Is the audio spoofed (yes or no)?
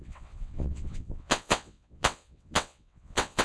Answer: yes